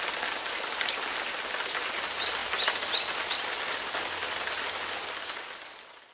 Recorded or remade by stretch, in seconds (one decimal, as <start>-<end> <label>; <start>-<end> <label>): 0.0-6.1 recorded